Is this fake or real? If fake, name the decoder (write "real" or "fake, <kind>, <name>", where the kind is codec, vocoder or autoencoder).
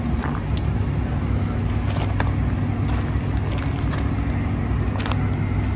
real